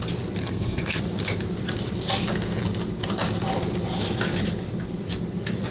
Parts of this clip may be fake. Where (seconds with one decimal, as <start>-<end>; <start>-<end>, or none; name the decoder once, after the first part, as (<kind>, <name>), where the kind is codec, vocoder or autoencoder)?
0.4-1.0 (codec, SNAC)

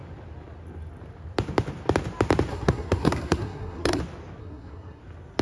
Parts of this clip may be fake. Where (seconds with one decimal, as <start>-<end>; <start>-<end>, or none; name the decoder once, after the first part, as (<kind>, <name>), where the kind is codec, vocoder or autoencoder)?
2.5-4.0 (codec, SNAC); 4.4-5.0

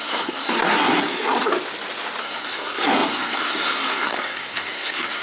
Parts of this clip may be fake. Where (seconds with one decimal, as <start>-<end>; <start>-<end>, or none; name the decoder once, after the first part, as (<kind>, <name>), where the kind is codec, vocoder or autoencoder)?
0.0-1.5 (codec, SNAC); 2.2-5.2

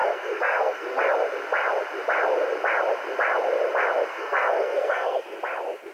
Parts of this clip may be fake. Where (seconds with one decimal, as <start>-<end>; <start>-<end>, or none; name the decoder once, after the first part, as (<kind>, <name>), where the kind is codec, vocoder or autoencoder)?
0.0-1.0 (codec, SNAC); 4.1-5.2

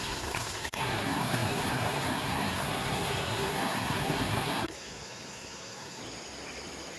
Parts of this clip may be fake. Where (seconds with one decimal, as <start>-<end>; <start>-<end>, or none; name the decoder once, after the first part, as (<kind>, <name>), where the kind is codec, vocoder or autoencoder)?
0.0-6.0 (codec, SNAC)